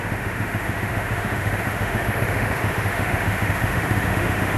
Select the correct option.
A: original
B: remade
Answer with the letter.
B